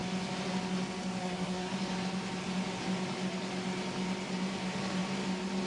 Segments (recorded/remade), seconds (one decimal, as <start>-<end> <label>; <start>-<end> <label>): 0.0-1.2 recorded; 1.2-1.7 remade; 1.7-5.7 recorded